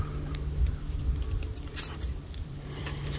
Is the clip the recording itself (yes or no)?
no